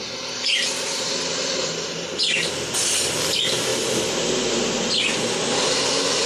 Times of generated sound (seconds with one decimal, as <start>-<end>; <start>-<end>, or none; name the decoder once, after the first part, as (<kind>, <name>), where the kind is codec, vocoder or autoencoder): 0.0-3.7 (vocoder, BigVGAN v2)